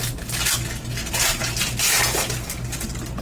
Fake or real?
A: real